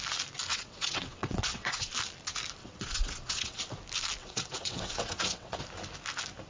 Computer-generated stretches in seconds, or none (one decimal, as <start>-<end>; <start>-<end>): 0.5-1.9; 2.6-3.6; 4.2-5.6